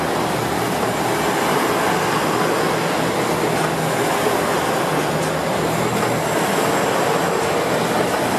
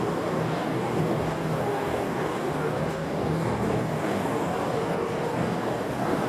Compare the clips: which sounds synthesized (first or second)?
second